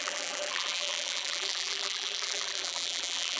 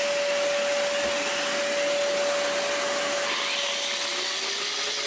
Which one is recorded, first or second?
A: second